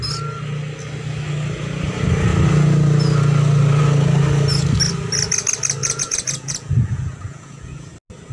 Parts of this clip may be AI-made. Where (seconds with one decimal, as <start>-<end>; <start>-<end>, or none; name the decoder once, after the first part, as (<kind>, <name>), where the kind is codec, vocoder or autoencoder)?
5.8-7.9 (vocoder, Vocos)